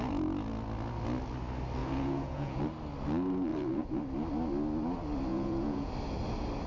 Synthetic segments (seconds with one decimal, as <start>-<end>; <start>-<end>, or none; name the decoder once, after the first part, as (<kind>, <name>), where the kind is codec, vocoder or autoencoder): 1.8-2.6 (vocoder, Vocos); 3.5-4.0; 5.3-5.9